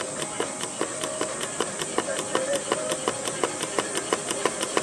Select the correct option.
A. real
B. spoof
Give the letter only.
A